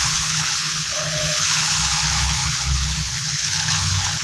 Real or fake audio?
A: fake